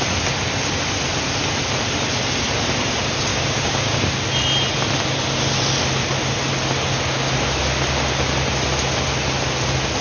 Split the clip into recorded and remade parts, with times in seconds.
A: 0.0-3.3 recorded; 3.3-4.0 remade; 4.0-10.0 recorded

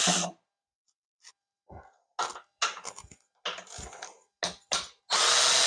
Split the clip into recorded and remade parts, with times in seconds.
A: 0.0-5.7 recorded